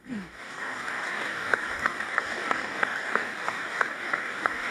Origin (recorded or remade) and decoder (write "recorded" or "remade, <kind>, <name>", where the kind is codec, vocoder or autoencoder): remade, codec, DAC